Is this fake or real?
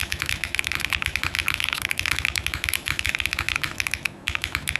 fake